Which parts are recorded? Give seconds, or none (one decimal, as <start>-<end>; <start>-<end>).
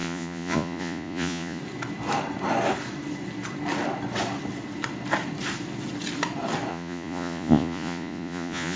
1.6-6.7